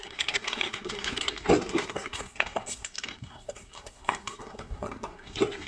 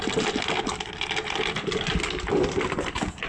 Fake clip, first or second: first